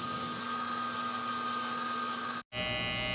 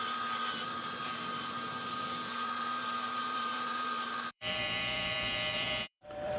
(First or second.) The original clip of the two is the first